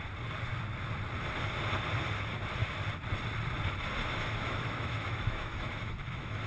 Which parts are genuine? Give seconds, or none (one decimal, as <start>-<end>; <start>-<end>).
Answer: 0.0-4.0